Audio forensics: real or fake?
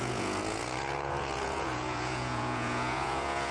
fake